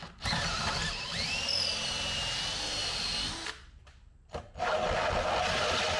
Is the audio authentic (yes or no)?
yes